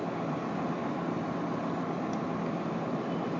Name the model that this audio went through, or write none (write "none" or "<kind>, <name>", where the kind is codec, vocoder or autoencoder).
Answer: none